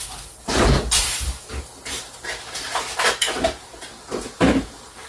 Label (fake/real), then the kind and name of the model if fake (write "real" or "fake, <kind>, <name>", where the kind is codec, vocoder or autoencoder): real